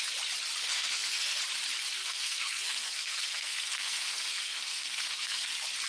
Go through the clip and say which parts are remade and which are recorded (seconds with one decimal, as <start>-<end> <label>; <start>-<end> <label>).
0.0-0.6 recorded; 0.6-1.4 remade; 1.4-2.0 recorded; 2.0-5.5 remade; 5.5-5.9 recorded